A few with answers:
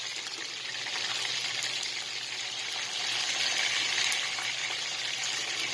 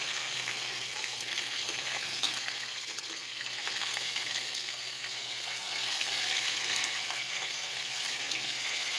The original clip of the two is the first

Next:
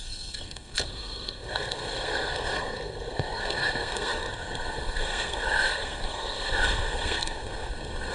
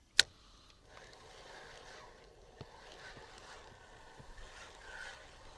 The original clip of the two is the second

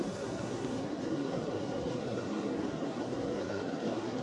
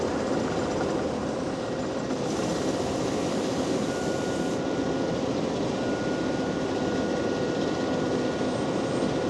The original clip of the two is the second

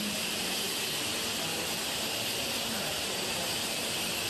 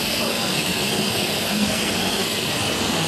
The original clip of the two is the first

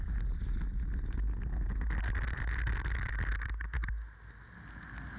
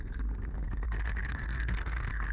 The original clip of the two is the first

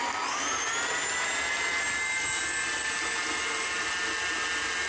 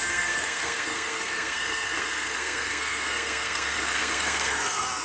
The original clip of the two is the first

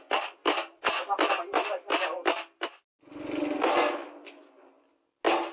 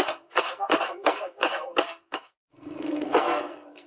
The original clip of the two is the first